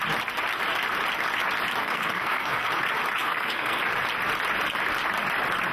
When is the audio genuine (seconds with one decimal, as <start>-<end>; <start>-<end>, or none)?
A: 0.0-1.8; 2.7-3.2; 3.8-5.7